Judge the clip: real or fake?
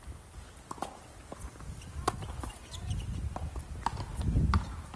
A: real